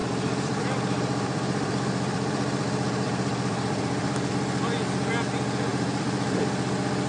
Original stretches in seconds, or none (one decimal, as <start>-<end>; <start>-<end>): 4.3-5.7; 6.4-7.1